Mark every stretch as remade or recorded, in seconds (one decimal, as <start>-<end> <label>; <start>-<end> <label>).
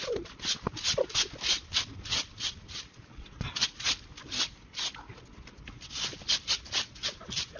0.0-3.1 recorded; 3.1-3.9 remade; 3.9-7.6 recorded